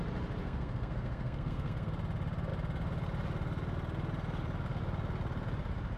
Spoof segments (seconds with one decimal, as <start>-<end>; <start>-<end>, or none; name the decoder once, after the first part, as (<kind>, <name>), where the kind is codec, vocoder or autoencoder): 0.4-1.9 (codec, SNAC)